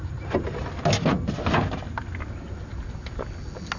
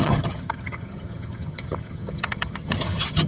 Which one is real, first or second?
first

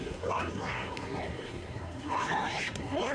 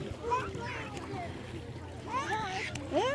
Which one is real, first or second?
second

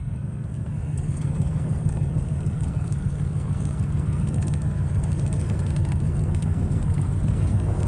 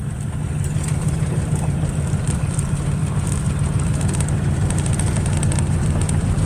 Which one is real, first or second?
second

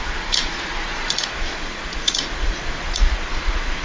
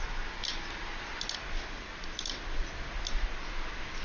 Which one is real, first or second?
second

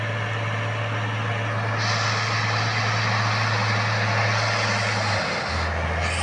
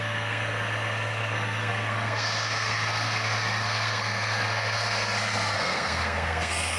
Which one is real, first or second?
first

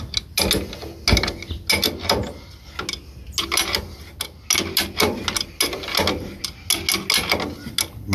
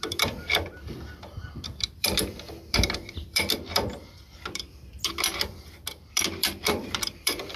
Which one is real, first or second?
first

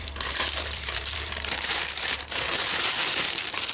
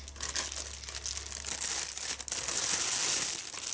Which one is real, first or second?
second